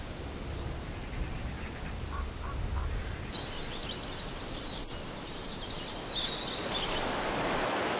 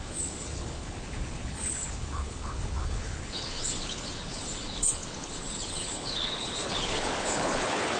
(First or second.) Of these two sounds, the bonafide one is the first